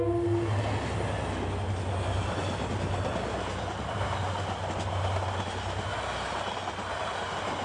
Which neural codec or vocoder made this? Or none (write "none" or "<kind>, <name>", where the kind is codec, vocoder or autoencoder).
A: none